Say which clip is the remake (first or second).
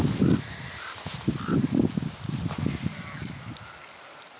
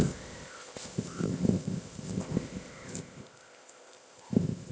second